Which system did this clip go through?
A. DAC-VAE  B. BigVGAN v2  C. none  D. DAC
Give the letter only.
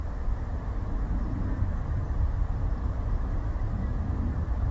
B